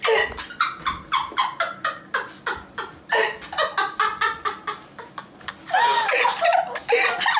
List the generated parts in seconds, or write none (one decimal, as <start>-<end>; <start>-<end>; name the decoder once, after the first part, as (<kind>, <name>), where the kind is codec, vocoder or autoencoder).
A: none